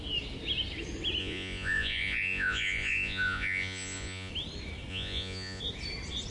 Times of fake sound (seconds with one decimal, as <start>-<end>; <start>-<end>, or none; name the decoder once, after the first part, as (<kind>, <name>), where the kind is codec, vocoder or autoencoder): 1.2-4.3 (vocoder, Vocos); 4.9-5.6